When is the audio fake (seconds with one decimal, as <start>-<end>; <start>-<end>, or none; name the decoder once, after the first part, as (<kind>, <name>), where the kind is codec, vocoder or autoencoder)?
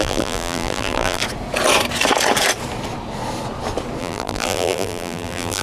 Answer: 0.0-1.2 (vocoder, BigVGAN v2); 4.0-5.6